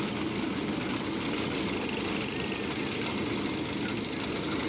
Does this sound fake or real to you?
real